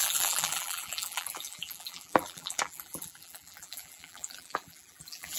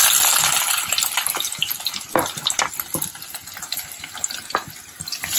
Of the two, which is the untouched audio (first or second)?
second